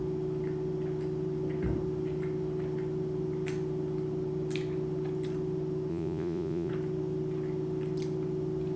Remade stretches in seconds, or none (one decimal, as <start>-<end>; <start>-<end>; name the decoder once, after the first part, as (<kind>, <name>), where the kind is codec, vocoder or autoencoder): 5.9-6.7 (vocoder, Vocos)